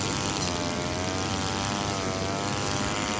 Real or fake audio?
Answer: real